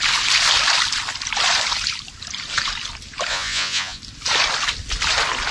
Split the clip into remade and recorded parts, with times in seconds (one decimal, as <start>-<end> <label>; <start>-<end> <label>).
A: 0.0-3.3 recorded; 3.3-4.0 remade; 4.0-5.5 recorded